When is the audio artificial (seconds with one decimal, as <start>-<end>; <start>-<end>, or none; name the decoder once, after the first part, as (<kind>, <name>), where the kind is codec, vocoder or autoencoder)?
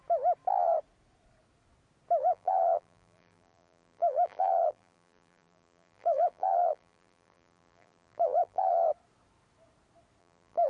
2.2-8.8 (vocoder, BigVGAN v2); 10.2-10.7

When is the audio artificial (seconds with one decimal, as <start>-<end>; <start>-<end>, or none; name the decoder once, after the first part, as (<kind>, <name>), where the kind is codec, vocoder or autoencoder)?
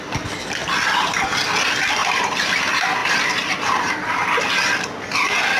2.0-2.6 (vocoder, BigVGAN v2); 3.0-4.4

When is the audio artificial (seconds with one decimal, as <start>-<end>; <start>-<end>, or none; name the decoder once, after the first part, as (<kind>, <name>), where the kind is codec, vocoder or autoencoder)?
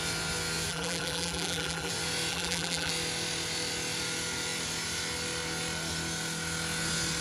0.7-1.9 (vocoder, BigVGAN v2); 2.3-2.9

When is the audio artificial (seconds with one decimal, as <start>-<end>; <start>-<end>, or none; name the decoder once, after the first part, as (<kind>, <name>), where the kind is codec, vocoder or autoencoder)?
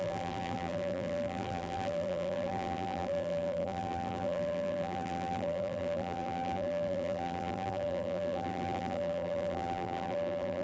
0.0-10.6 (vocoder, BigVGAN v2)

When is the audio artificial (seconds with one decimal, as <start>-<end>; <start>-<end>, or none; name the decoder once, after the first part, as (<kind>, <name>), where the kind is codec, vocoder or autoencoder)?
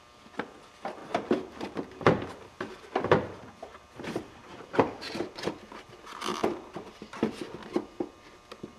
1.0-2.7 (vocoder, BigVGAN v2); 3.7-5.5; 6.3-7.1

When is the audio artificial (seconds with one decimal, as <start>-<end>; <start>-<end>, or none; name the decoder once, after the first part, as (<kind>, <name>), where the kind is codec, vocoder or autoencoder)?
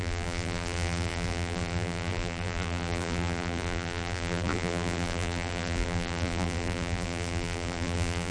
0.0-8.3 (vocoder, BigVGAN v2)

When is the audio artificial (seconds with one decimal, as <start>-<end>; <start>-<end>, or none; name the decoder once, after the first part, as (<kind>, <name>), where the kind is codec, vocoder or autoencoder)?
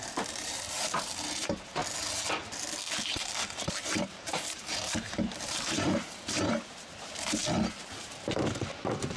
0.0-1.8 (vocoder, BigVGAN v2); 3.7-7.4; 8.0-9.2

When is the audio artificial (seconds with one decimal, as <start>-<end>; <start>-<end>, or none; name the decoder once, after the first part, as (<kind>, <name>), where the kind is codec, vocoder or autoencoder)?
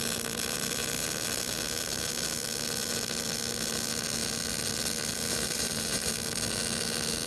5.3-6.1 (vocoder, BigVGAN v2)